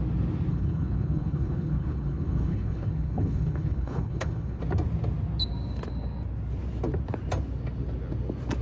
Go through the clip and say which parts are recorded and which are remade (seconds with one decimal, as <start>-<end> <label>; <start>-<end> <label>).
0.0-0.5 recorded; 0.5-4.6 remade; 4.6-8.6 recorded